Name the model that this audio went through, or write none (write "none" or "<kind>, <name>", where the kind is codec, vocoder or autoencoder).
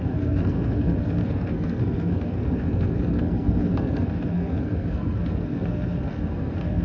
codec, SNAC